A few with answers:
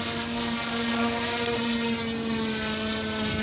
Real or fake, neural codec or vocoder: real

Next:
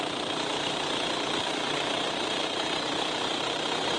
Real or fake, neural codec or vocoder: fake, vocoder, BigVGAN v2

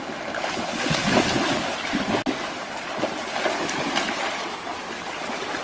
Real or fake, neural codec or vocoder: real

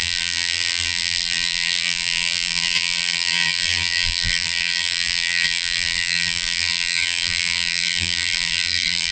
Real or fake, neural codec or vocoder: fake, vocoder, BigVGAN v2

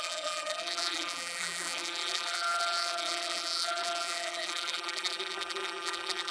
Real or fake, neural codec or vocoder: fake, vocoder, BigVGAN v2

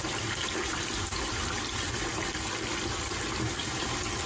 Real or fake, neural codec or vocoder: real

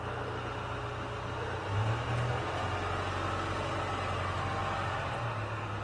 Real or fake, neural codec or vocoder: real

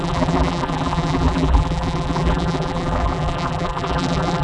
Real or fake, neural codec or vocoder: fake, vocoder, BigVGAN v2